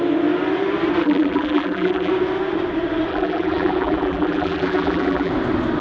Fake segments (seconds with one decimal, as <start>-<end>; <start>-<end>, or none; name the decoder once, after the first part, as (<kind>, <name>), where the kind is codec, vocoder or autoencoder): 1.0-2.1 (vocoder, BigVGAN v2); 3.1-5.3